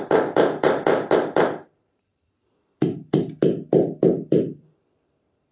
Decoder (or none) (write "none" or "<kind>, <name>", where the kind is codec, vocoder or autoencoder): vocoder, BigVGAN v2